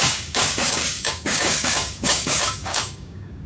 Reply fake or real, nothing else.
fake